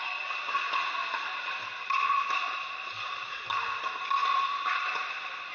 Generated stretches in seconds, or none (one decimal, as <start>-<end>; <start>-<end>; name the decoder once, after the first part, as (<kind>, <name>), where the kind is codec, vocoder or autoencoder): none